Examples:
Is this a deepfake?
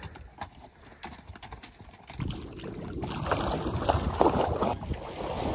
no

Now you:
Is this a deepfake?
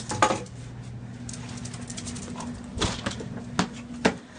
no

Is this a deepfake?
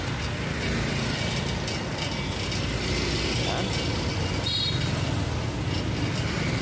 no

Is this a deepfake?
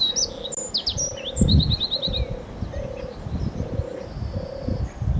no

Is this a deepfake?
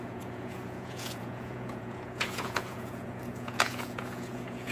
yes